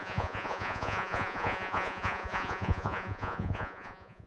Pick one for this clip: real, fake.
fake